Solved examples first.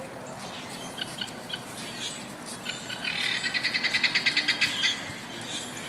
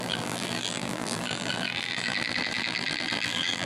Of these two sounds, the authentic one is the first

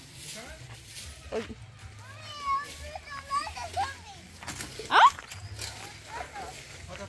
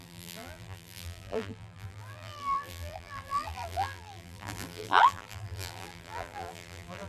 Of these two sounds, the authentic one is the first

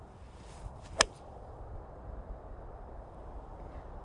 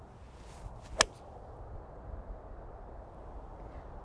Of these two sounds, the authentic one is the second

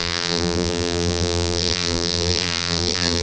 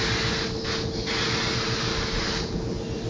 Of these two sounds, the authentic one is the second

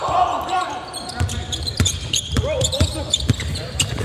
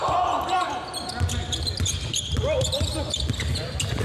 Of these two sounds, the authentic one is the second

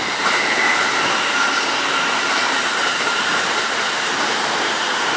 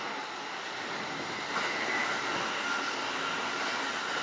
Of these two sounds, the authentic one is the second